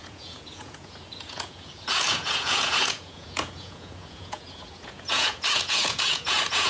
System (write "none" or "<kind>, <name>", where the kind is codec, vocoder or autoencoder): vocoder, Vocos